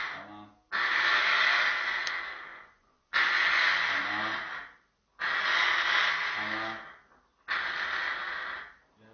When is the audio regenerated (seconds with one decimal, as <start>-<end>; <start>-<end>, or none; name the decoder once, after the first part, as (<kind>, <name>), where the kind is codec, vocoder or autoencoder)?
2.5-3.8 (vocoder, Vocos)